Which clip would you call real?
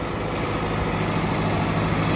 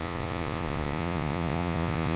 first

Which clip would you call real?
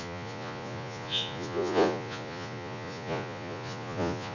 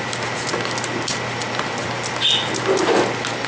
second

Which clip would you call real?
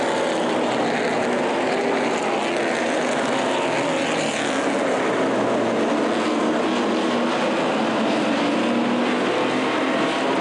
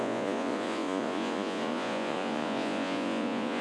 first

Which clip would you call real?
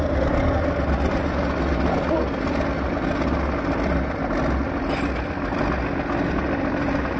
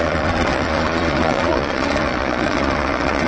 first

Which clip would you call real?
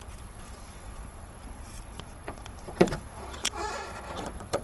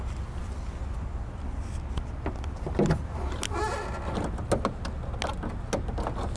second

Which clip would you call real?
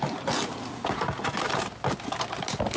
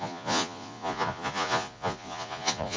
first